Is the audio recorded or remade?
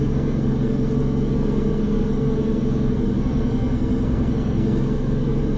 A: remade